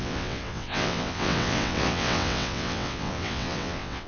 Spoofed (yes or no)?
yes